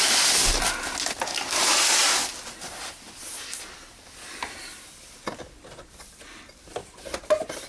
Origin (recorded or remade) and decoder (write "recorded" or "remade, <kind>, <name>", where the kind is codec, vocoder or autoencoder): recorded